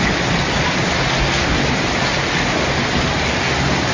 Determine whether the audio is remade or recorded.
recorded